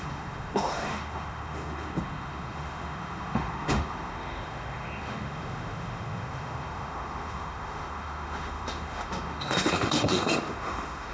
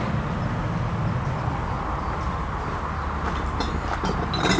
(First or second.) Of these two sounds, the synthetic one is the first